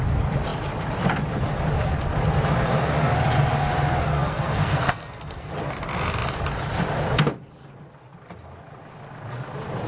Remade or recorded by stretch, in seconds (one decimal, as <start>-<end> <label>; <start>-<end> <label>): 0.0-4.1 recorded; 4.1-5.5 remade; 5.5-9.9 recorded